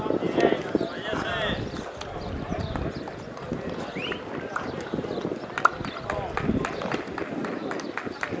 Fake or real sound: real